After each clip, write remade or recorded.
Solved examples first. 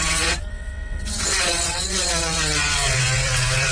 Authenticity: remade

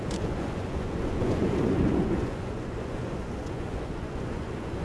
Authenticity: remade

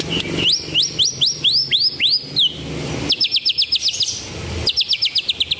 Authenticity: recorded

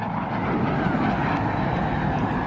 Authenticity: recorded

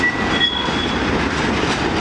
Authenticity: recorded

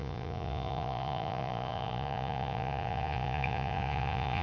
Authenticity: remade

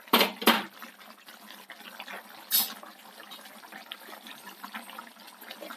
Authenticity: recorded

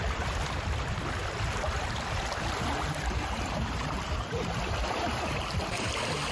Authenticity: remade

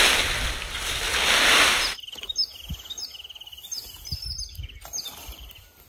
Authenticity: recorded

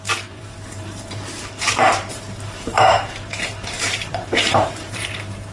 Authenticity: remade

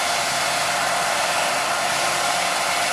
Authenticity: recorded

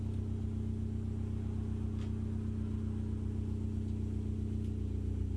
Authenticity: recorded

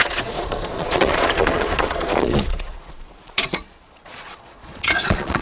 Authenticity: remade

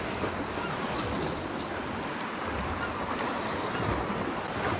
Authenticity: recorded